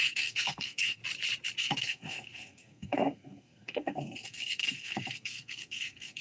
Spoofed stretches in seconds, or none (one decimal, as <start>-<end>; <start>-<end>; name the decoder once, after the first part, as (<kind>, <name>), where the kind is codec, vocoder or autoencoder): 0.0-1.0 (codec, SNAC); 1.6-6.2